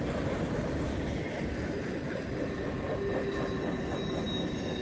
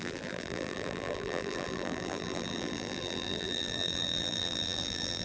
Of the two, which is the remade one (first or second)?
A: second